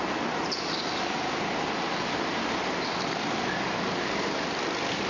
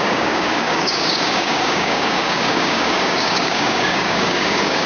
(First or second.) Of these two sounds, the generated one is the second